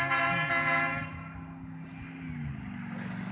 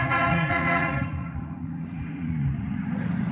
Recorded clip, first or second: first